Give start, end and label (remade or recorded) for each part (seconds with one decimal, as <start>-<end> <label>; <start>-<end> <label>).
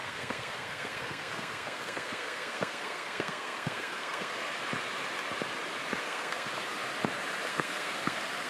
0.0-4.5 remade; 4.5-6.0 recorded; 6.0-6.5 remade; 6.5-7.5 recorded; 7.5-8.5 remade